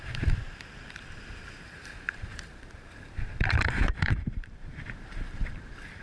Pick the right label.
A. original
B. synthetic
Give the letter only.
B